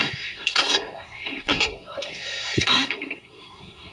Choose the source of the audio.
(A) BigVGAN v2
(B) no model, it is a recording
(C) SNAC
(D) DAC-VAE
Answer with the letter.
C